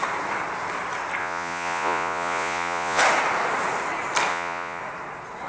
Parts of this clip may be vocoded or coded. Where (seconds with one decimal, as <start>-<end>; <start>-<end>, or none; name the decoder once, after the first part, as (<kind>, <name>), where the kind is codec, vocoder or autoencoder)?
1.2-3.0 (vocoder, Vocos); 4.3-4.8